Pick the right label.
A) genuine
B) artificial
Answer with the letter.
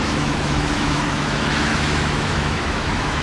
B